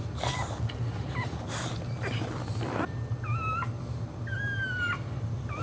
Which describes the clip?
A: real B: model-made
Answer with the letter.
A